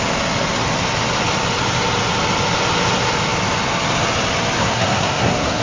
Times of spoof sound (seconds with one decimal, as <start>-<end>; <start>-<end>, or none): 4.6-5.6